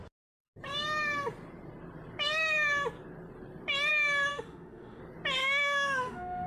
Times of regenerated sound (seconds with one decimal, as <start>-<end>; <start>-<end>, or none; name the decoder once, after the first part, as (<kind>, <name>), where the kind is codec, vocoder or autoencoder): 4.3-5.0 (autoencoder, DAC-VAE); 5.4-6.5